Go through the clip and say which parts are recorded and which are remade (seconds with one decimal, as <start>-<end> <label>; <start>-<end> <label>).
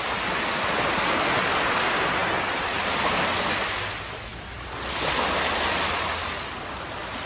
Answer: 0.0-7.3 recorded